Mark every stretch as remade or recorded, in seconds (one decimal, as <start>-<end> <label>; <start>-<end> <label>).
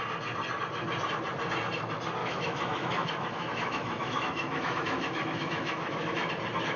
0.0-2.2 recorded; 2.2-6.3 remade; 6.3-6.8 recorded